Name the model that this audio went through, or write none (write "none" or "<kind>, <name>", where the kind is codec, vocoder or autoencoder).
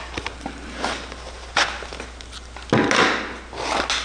none